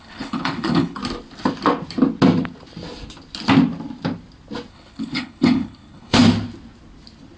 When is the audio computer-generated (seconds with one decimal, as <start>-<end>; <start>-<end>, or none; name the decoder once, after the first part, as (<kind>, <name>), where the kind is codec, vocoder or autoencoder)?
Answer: 0.0-1.0 (codec, HILCodec); 4.7-6.2